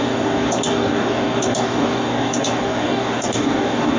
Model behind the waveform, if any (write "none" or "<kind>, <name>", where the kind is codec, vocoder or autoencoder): codec, DAC